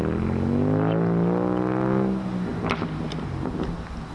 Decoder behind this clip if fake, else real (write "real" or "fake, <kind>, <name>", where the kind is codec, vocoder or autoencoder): real